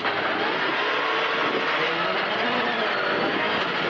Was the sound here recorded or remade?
recorded